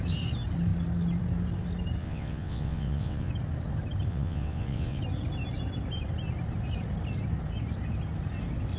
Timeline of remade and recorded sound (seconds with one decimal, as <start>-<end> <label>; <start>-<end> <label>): 0.0-2.0 recorded; 2.0-3.3 remade; 3.3-4.1 recorded; 4.1-5.0 remade; 5.0-8.8 recorded